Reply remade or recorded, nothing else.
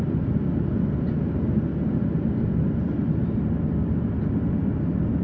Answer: recorded